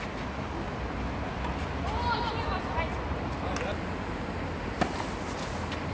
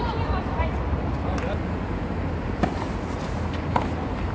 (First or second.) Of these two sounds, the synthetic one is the second